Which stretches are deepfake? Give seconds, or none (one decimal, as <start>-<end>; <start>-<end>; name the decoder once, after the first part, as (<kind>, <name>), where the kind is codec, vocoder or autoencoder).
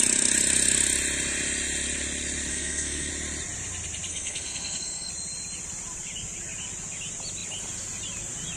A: 2.5-3.1 (codec, SNAC); 4.1-5.1